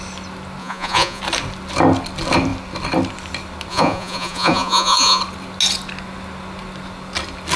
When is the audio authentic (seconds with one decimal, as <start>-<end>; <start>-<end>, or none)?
0.0-0.6; 1.2-3.7; 5.2-7.6